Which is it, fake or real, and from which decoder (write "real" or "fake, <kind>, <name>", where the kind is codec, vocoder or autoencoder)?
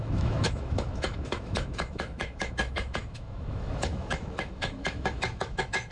fake, autoencoder, DAC-VAE